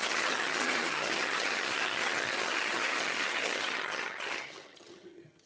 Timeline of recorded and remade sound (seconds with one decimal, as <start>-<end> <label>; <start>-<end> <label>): 0.0-5.5 remade